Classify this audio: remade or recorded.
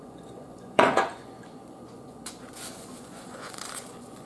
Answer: remade